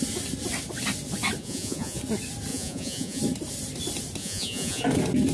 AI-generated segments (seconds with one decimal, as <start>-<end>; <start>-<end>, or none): 1.4-2.0; 2.5-3.2; 4.2-4.8